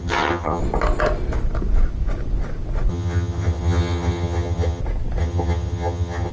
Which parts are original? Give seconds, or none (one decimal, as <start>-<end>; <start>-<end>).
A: 0.6-2.9; 4.8-5.2